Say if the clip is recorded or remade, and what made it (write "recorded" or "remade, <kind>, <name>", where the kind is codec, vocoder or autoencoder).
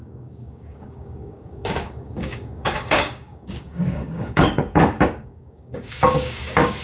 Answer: remade, codec, DAC